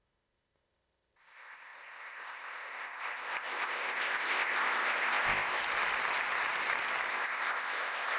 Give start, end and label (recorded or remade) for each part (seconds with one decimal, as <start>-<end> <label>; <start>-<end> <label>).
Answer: 0.0-5.6 remade; 5.6-7.1 recorded; 7.1-8.2 remade